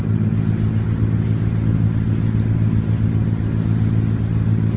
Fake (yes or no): no